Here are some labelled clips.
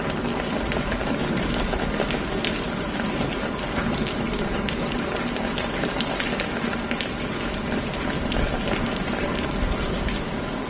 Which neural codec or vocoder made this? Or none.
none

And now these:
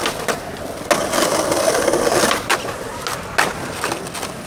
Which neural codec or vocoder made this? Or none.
none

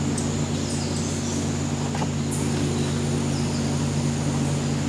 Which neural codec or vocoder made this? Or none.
none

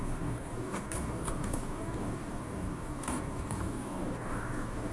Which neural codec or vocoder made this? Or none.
codec, DAC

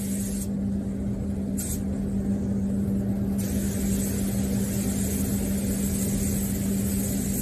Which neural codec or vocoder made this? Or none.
none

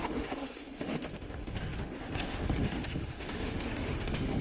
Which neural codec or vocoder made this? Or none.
autoencoder, DAC-VAE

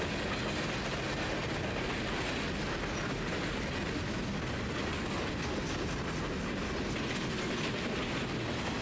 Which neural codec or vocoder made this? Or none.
none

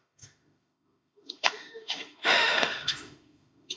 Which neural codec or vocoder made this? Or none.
autoencoder, DAC-VAE